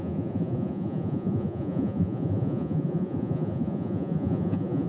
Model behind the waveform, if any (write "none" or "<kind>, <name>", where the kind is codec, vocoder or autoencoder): vocoder, Vocos